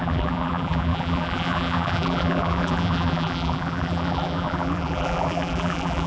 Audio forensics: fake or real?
fake